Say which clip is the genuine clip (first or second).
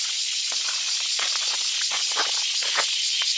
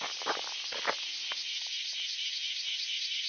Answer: second